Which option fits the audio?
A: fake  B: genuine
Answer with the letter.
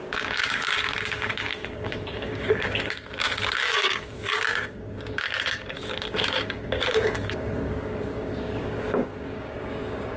A